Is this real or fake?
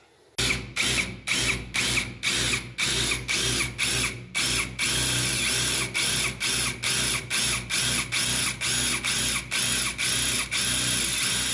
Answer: real